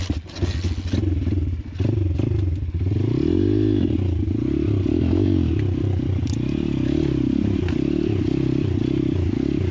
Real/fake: real